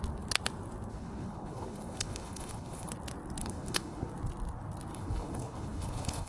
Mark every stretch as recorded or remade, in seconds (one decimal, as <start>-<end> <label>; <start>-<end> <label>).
0.0-0.9 recorded; 0.9-2.9 remade; 2.9-3.4 recorded; 3.4-4.1 remade; 4.1-4.9 recorded; 4.9-6.3 remade